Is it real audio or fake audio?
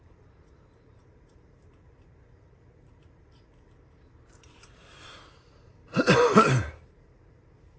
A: fake